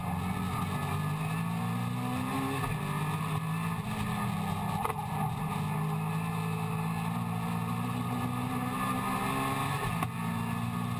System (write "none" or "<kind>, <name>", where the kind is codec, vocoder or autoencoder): none